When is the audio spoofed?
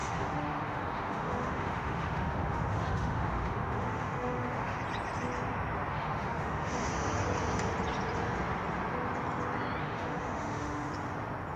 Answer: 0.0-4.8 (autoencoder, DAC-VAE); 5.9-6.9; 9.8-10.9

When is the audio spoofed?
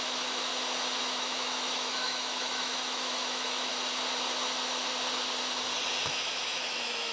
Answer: 0.0-0.5 (autoencoder, DAC-VAE); 1.0-3.7; 6.1-7.1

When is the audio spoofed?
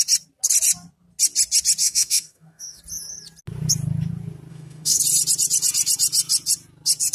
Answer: 1.8-2.8 (autoencoder, DAC-VAE); 4.5-5.0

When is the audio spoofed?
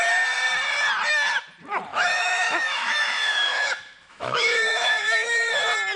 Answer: 1.9-5.5 (autoencoder, DAC-VAE)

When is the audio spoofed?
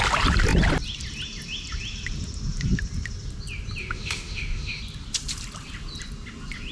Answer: 3.8-4.8 (autoencoder, DAC-VAE)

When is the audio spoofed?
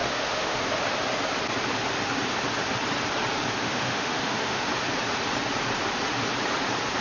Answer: 0.0-0.6 (autoencoder, DAC-VAE); 3.6-4.7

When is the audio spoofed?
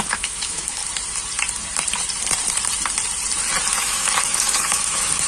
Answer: 0.0-0.8 (autoencoder, DAC-VAE); 3.7-5.3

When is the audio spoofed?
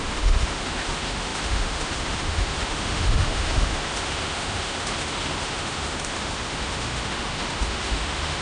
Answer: 0.0-8.4 (autoencoder, DAC-VAE)